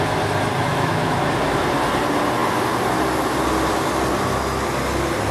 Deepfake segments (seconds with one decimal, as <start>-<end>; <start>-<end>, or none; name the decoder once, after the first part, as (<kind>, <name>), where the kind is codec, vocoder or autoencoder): 0.7-1.2 (autoencoder, DAC-VAE)